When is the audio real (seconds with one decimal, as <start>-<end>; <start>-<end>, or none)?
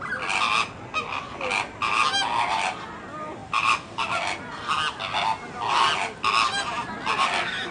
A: 0.0-7.7